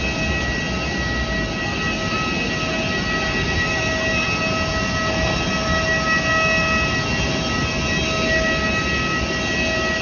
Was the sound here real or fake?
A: real